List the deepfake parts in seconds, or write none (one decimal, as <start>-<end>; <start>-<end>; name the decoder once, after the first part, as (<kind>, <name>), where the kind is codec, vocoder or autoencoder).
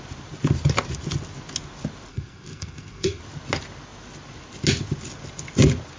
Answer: 2.1-3.2 (codec, SNAC)